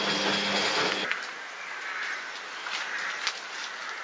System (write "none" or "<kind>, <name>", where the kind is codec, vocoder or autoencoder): none